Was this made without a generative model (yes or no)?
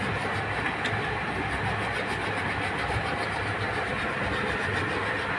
yes